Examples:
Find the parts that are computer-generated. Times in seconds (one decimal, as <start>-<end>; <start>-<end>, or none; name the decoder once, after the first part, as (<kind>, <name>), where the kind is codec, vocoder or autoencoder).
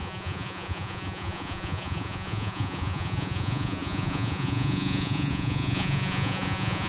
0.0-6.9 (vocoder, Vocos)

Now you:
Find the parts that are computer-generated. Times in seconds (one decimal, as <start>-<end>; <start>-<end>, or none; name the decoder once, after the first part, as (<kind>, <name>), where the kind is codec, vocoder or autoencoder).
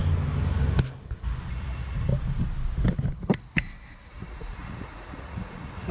1.5-2.1 (vocoder, Vocos); 4.1-5.9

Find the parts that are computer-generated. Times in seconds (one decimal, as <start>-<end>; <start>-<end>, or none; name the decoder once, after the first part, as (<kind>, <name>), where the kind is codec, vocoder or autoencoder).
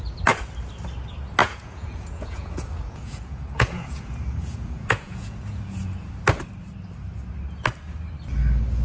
1.4-6.1 (vocoder, Vocos)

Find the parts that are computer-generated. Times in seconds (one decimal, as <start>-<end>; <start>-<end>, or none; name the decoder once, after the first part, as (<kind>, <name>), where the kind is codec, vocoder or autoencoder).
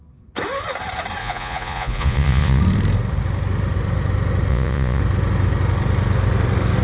1.2-2.6 (vocoder, Vocos); 4.5-5.0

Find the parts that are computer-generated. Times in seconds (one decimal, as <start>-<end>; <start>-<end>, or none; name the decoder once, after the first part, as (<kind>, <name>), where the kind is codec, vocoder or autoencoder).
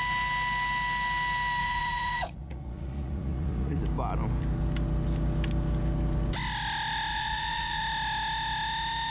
1.6-3.8 (vocoder, Vocos); 7.1-7.8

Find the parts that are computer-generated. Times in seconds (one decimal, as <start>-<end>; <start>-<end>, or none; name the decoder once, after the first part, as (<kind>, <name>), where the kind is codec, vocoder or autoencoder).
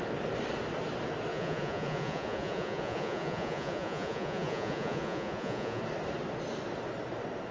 1.3-5.8 (vocoder, Vocos)